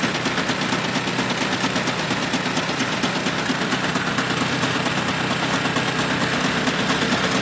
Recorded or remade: recorded